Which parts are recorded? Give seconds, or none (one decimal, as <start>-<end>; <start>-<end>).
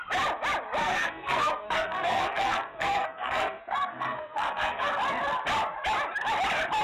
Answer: 0.0-0.8; 4.9-6.8